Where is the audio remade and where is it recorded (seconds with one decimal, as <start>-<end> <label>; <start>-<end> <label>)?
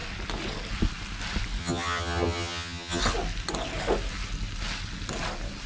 0.0-1.6 recorded; 1.6-3.0 remade; 3.0-5.7 recorded